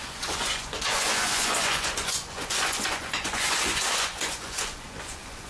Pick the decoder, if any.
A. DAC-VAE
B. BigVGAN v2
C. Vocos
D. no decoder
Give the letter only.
C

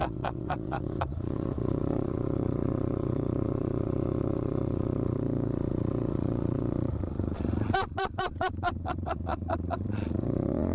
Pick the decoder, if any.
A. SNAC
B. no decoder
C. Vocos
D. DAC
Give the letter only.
C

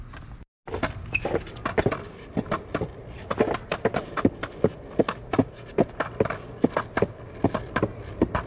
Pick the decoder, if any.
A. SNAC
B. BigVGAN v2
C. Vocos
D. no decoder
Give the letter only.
D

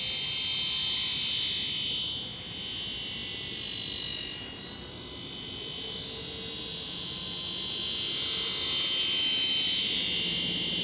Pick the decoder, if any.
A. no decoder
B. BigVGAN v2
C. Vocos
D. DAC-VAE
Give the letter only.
A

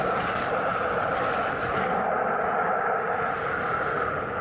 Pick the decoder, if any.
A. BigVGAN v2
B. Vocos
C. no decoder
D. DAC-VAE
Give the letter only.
C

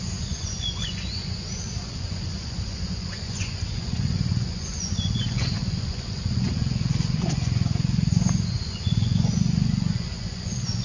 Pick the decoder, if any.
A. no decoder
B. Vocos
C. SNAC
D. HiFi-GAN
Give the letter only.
B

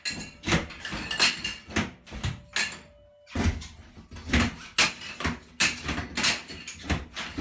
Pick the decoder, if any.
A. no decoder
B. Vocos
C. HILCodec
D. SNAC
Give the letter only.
A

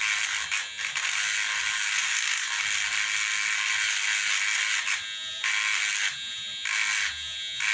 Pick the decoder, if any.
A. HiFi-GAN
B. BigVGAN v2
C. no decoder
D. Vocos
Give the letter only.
C